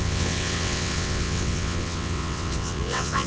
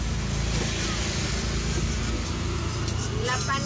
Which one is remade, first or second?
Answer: first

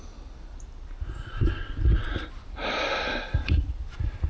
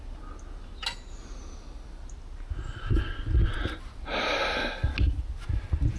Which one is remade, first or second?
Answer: first